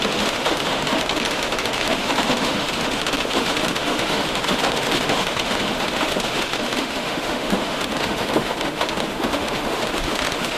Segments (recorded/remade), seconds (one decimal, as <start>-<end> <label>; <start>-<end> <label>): 0.0-10.6 remade